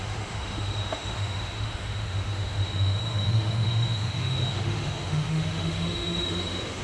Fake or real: fake